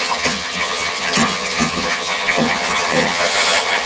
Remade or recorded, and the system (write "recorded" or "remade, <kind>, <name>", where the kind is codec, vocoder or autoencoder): remade, vocoder, HiFi-GAN